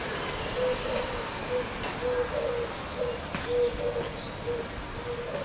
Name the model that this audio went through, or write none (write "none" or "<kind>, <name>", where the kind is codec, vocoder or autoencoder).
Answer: none